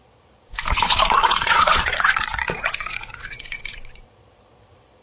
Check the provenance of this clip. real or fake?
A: fake